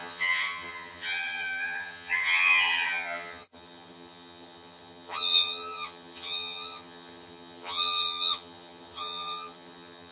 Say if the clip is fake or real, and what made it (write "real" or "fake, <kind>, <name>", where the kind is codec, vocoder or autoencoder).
fake, vocoder, HiFi-GAN